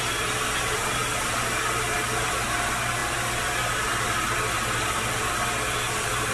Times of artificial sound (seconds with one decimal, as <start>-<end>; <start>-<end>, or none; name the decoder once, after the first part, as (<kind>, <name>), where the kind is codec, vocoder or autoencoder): none

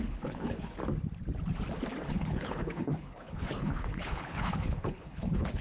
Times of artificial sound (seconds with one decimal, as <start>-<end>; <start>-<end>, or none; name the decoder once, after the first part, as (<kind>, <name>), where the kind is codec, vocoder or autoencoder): 0.0-0.8 (codec, HILCodec); 2.1-5.6

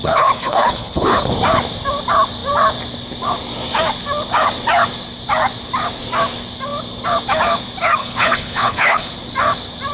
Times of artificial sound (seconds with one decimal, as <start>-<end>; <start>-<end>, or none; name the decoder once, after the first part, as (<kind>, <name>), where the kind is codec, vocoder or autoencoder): 0.0-1.3 (codec, HILCodec); 8.0-9.1

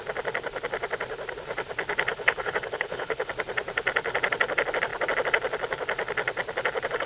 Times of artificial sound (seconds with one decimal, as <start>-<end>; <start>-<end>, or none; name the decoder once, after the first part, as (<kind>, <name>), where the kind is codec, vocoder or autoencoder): 2.1-3.3 (codec, HILCodec)

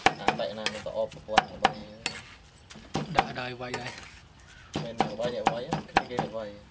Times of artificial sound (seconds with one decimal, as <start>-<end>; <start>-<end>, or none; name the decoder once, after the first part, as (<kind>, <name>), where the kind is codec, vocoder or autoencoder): none

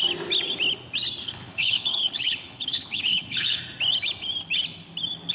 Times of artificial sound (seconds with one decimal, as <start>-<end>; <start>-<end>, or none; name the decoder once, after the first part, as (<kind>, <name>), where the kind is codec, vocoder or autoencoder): 1.2-3.6 (codec, HILCodec)

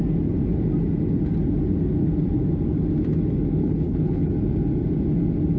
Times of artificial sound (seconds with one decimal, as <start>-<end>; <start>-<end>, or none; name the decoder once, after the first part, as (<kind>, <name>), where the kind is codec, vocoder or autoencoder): 3.6-4.3 (codec, HILCodec)